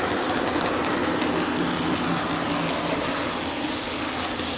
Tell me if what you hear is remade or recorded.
recorded